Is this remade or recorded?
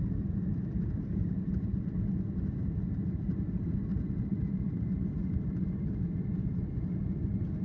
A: recorded